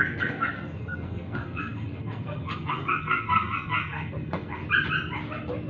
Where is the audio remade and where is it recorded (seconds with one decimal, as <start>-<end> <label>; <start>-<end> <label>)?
0.0-4.6 remade; 4.6-5.7 recorded